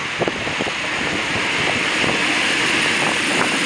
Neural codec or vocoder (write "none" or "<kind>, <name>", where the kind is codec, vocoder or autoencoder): none